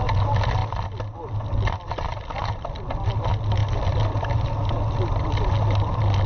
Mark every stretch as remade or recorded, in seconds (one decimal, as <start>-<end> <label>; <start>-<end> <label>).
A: 0.0-6.3 recorded